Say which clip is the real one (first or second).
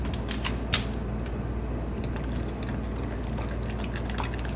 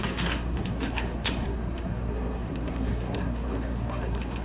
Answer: first